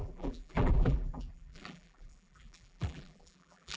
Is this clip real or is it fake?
fake